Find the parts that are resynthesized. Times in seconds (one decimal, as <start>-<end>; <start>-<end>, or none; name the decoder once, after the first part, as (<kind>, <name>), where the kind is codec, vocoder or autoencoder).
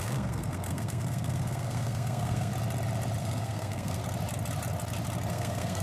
0.0-2.5 (codec, SNAC); 3.2-4.0; 5.3-5.8